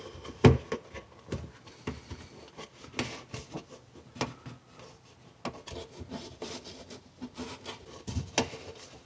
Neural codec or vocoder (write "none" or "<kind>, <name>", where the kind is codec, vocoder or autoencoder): none